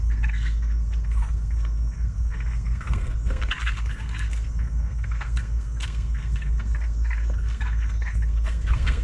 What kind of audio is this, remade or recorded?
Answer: remade